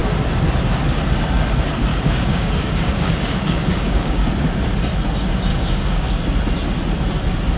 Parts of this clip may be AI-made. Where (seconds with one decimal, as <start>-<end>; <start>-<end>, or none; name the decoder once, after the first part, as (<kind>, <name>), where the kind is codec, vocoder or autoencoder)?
1.9-4.3 (codec, DAC); 5.5-6.1